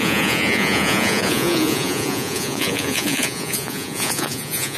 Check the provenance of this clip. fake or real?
fake